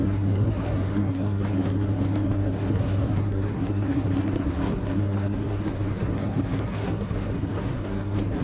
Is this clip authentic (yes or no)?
no